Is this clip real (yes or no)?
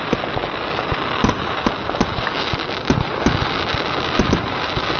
yes